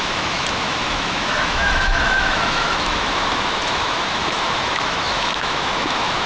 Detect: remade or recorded remade